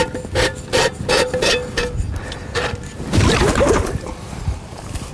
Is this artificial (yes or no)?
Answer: no